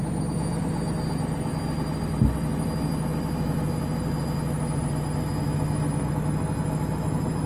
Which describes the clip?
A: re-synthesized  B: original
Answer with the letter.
B